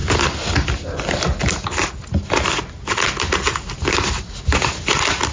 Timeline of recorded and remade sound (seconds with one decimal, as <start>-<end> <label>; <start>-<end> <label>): 0.0-5.3 recorded